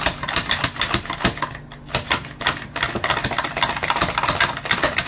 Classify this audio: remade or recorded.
recorded